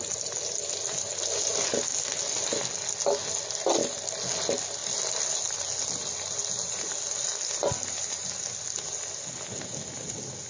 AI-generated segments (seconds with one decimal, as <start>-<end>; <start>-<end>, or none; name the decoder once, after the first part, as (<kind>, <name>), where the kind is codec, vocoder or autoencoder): none